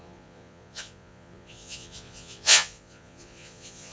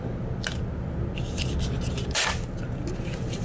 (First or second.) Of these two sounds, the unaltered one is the second